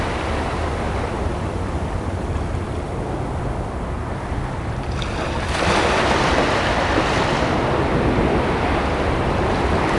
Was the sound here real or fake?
real